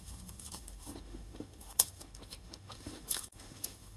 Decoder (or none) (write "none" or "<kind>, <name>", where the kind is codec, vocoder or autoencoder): autoencoder, DAC-VAE